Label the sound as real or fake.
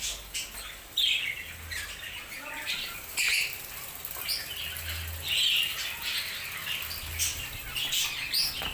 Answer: real